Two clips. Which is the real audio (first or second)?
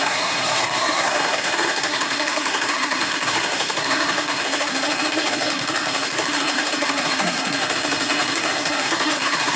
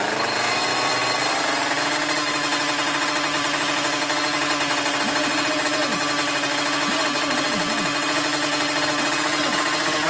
second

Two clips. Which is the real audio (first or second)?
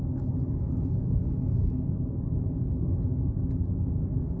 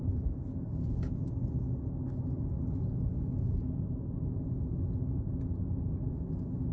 second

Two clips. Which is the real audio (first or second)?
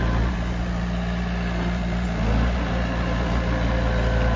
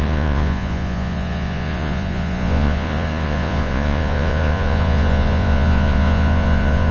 first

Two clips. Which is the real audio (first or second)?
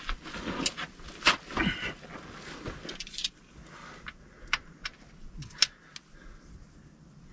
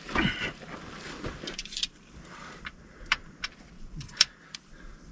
first